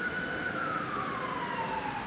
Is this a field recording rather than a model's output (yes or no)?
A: yes